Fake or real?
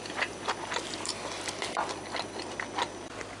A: real